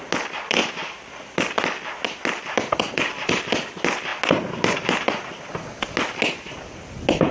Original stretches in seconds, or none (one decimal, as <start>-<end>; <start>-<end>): 0.0-7.3